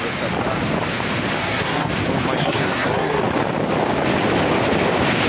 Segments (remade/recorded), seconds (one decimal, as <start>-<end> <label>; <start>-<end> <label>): 0.0-1.4 recorded; 1.4-1.9 remade; 1.9-2.4 recorded; 2.4-3.2 remade; 3.2-5.3 recorded